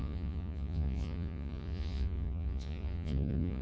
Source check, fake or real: fake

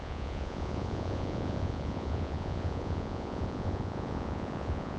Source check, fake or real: fake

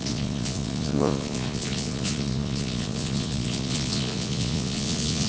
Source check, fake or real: fake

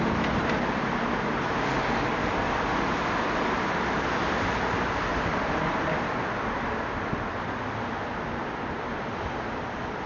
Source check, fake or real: real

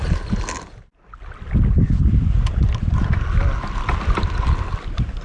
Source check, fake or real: real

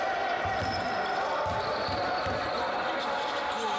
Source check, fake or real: real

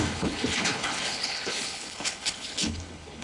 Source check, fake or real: fake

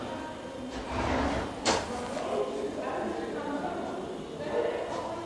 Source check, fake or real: real